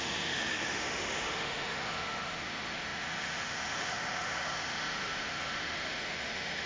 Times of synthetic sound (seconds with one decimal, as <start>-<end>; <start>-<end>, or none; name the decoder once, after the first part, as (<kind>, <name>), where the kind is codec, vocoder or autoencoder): 0.0-6.7 (autoencoder, DAC-VAE)